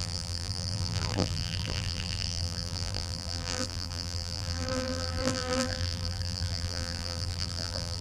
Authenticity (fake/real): fake